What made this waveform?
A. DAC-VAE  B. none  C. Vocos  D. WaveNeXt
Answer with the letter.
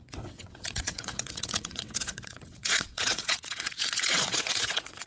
D